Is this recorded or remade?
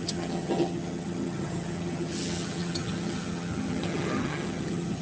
remade